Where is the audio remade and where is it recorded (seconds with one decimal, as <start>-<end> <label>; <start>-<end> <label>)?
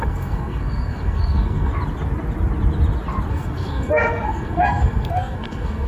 0.0-1.7 remade; 1.7-3.3 recorded; 3.3-5.9 remade